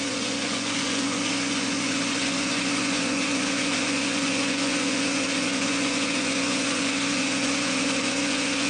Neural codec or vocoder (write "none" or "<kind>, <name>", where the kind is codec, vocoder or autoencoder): vocoder, Vocos